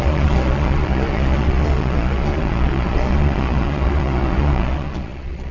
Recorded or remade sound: remade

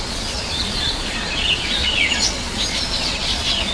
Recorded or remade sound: remade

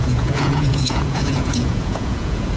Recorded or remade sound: remade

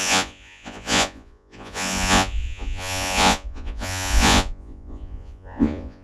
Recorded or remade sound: remade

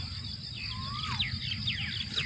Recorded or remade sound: recorded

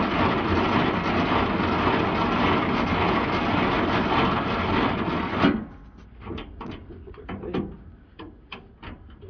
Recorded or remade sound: recorded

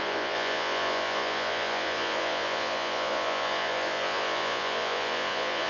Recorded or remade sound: remade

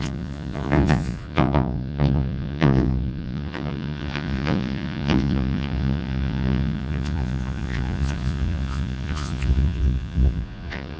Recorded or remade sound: remade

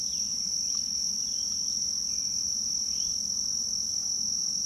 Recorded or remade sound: recorded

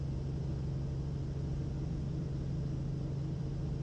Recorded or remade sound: recorded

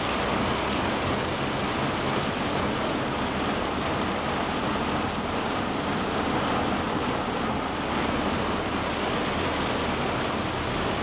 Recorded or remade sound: recorded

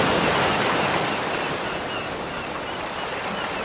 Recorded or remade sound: recorded